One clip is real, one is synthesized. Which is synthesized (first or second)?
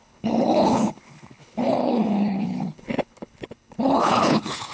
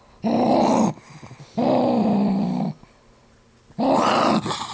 first